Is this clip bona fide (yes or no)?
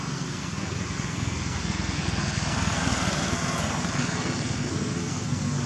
no